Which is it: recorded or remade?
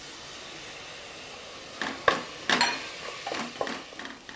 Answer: recorded